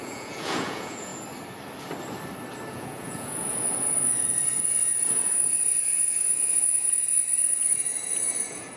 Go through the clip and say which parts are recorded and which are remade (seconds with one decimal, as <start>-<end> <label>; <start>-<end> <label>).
0.0-1.1 remade; 1.1-2.7 recorded; 2.7-8.8 remade